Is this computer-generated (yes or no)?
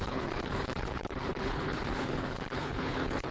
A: yes